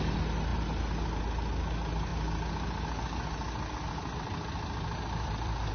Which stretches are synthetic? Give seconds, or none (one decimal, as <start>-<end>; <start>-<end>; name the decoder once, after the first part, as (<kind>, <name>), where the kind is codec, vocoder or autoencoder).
none